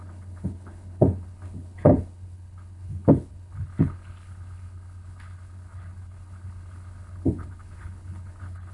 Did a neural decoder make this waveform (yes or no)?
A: yes